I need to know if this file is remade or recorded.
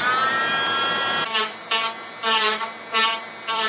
remade